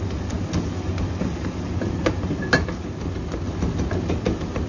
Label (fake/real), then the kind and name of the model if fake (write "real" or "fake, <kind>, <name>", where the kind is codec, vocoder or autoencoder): real